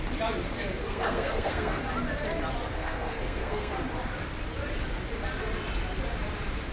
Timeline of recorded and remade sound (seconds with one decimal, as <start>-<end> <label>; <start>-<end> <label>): 0.0-0.8 recorded; 0.8-1.8 remade; 1.8-2.7 recorded; 2.7-3.7 remade; 3.7-6.7 recorded